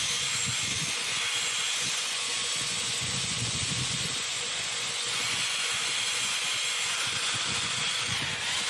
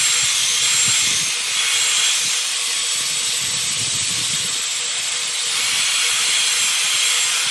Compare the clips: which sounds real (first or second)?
second